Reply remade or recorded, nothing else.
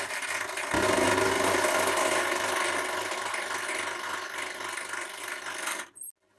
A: recorded